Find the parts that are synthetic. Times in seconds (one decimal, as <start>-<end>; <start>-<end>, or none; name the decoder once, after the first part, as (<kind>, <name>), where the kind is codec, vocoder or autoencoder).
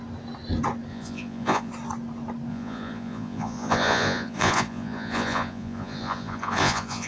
0.9-1.7 (vocoder, Vocos); 2.5-7.1